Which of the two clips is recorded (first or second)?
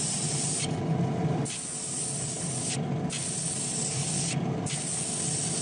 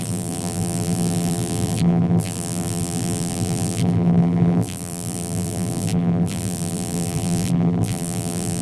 first